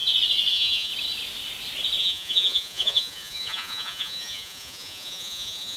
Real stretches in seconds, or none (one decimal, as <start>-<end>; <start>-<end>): 0.0-0.5; 0.9-2.0

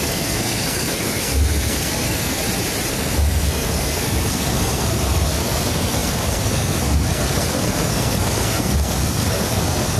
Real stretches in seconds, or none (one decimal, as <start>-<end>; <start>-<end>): 2.4-2.9

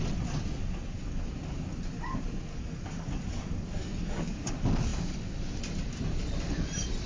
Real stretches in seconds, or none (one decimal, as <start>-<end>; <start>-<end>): 0.0-2.5; 4.5-7.1

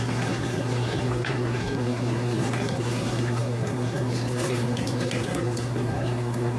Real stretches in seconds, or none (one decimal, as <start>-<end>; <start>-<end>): none